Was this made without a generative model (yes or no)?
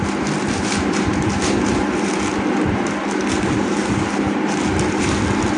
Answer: yes